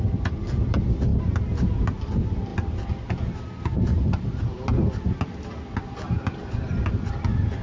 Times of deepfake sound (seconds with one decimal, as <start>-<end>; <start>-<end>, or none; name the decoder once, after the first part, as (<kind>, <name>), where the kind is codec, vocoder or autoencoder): none